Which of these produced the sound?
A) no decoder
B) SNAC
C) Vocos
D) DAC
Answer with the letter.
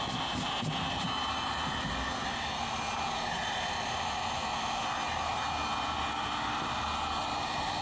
A